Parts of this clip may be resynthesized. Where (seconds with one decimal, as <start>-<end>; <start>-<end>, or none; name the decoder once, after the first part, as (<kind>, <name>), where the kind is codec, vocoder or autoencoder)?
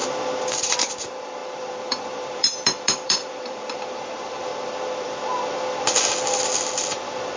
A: 0.6-4.5 (vocoder, BigVGAN v2)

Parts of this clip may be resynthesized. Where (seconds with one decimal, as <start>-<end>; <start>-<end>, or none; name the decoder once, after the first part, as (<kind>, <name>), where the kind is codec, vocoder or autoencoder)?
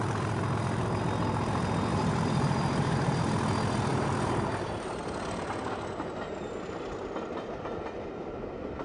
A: 0.0-1.0 (vocoder, BigVGAN v2); 1.9-3.1; 3.9-5.0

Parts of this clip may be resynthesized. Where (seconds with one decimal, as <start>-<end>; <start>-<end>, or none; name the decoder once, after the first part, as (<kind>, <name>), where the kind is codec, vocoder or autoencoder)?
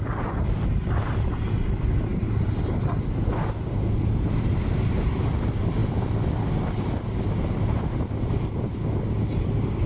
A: none